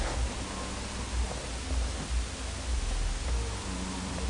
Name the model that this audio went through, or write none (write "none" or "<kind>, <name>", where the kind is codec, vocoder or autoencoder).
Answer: none